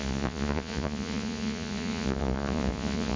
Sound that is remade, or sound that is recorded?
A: remade